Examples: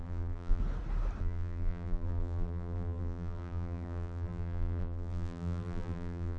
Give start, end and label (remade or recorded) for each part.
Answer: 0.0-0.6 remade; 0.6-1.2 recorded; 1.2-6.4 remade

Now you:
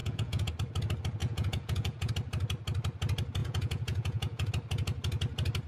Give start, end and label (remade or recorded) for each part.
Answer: 0.0-0.5 remade; 0.5-1.2 recorded; 1.2-2.1 remade; 2.1-3.4 recorded; 3.4-4.5 remade; 4.5-5.7 recorded

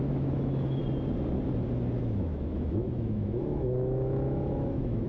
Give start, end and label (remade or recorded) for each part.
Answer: 0.0-0.8 remade; 0.8-2.0 recorded; 2.0-5.1 remade

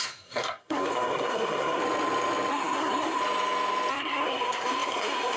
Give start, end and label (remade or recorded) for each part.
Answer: 0.0-1.8 remade; 1.8-2.5 recorded; 2.5-3.2 remade; 3.2-3.9 recorded; 3.9-5.4 remade